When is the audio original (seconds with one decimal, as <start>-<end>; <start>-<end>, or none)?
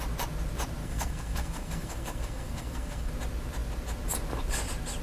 0.0-0.8; 3.1-5.0